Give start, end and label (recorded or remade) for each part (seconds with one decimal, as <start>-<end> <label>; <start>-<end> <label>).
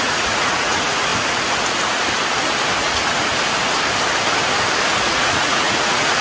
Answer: 0.0-1.1 remade; 1.1-2.8 recorded; 2.8-3.3 remade; 3.3-5.1 recorded; 5.1-6.2 remade